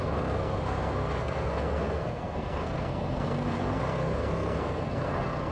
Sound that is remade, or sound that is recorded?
remade